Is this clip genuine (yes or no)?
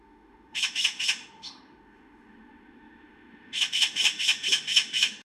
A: no